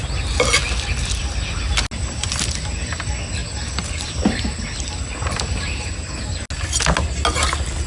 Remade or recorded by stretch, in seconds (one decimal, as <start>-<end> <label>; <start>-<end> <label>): 0.0-7.9 recorded